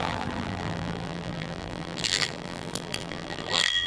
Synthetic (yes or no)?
yes